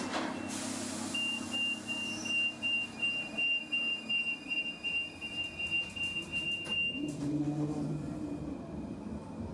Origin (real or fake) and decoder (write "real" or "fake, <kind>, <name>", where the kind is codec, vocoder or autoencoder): fake, vocoder, BigVGAN v2